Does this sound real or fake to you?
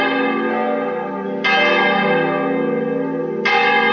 real